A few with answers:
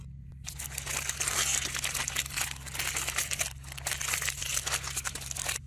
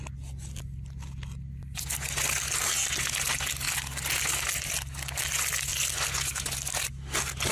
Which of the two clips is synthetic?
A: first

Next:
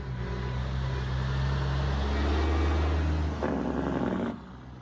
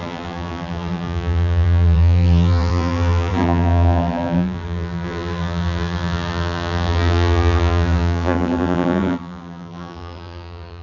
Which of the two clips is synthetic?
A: second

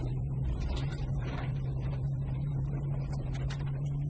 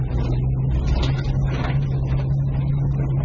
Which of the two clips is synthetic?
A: first